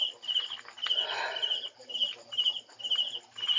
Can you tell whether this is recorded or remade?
recorded